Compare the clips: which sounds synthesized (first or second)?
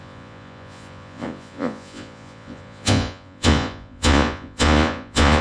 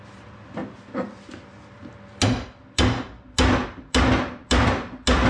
first